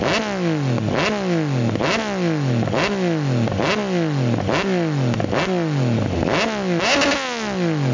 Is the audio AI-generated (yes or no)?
no